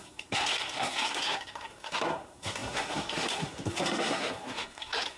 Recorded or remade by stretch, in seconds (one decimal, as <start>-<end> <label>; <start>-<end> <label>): 0.0-5.2 remade